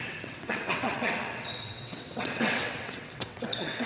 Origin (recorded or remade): remade